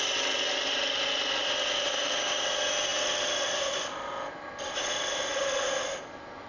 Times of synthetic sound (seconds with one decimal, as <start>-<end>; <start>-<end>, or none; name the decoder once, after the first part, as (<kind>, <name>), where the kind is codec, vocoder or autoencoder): none